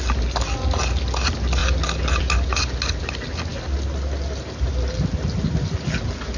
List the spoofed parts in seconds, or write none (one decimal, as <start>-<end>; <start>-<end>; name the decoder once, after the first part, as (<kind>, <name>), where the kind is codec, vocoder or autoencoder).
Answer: none